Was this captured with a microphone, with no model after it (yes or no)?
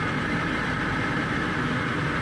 no